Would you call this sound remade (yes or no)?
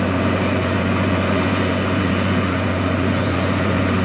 yes